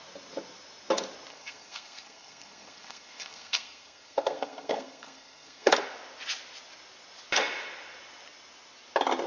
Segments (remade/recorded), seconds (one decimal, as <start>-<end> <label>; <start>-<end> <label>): 0.0-1.3 recorded; 1.3-5.7 remade; 5.7-9.3 recorded